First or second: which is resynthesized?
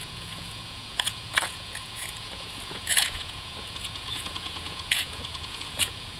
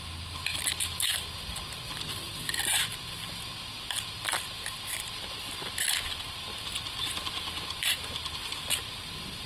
first